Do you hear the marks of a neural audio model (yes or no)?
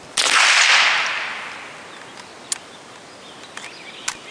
no